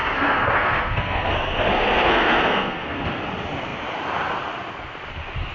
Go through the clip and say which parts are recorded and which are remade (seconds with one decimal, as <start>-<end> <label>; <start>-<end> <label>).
0.0-3.0 remade; 3.0-5.5 recorded

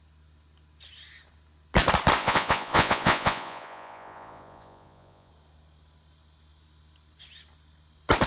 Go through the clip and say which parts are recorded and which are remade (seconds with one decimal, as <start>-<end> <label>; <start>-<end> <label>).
0.0-2.2 recorded; 2.2-5.3 remade; 5.3-8.3 recorded

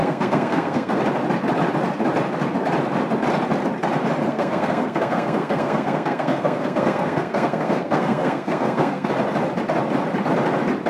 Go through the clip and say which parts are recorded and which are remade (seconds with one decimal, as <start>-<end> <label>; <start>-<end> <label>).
0.0-1.0 remade; 1.0-4.3 recorded; 4.3-9.1 remade; 9.1-10.9 recorded

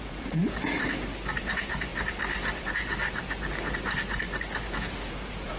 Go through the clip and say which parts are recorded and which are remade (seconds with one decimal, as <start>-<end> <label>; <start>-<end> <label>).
0.0-0.4 remade; 0.4-1.4 recorded; 1.4-1.9 remade; 1.9-2.6 recorded; 2.6-3.0 remade; 3.0-4.7 recorded; 4.7-5.6 remade

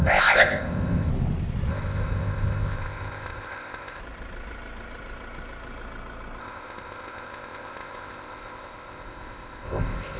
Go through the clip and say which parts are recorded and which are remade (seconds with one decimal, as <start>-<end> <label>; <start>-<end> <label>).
0.0-1.1 remade; 1.1-1.7 recorded; 1.7-4.0 remade; 4.0-6.4 recorded; 6.4-10.2 remade

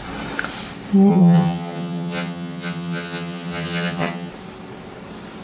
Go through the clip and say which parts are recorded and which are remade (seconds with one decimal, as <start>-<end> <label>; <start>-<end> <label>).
0.0-1.1 recorded; 1.1-4.3 remade; 4.3-5.4 recorded

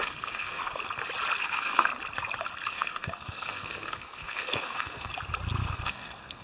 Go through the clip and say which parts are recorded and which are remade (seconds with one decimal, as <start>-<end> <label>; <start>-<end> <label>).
0.0-0.6 remade; 0.6-1.4 recorded; 1.4-1.9 remade; 1.9-2.7 recorded; 2.7-5.1 remade; 5.1-5.7 recorded; 5.7-6.4 remade

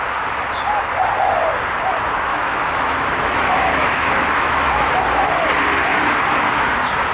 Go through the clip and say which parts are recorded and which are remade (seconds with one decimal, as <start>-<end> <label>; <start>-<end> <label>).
0.0-2.3 recorded; 2.3-4.9 remade; 4.9-7.1 recorded